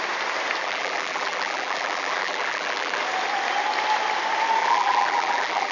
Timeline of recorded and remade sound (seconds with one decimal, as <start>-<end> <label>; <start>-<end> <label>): 0.0-0.6 recorded; 0.6-3.0 remade; 3.0-4.6 recorded; 4.6-5.7 remade